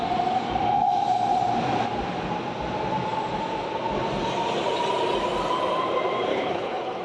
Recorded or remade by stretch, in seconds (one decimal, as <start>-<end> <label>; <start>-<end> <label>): 0.0-6.3 recorded; 6.3-7.0 remade